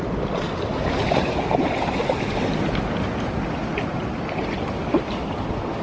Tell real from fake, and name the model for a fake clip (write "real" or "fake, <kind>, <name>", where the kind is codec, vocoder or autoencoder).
real